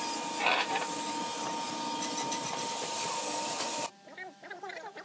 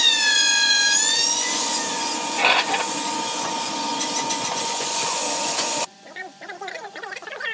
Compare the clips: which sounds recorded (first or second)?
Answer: first